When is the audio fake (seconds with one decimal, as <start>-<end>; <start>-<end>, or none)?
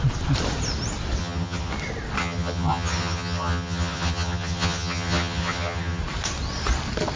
1.2-1.7; 2.2-6.0